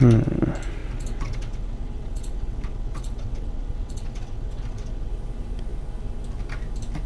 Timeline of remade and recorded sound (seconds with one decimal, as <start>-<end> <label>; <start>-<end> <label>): 0.0-0.8 recorded; 0.8-5.1 remade; 5.1-7.1 recorded